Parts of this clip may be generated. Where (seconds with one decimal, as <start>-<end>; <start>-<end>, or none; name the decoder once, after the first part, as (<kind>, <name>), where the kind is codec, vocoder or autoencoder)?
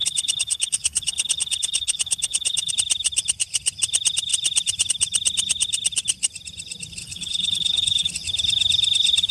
0.0-2.7 (codec, HILCodec); 7.0-8.1